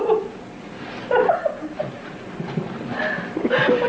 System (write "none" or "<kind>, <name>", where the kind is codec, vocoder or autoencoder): none